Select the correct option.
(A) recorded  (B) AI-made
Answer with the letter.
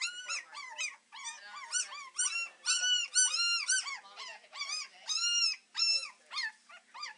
A